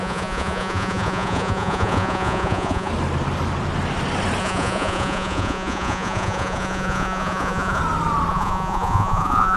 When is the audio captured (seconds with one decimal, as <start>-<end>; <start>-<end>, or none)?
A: 2.9-4.4; 7.8-8.3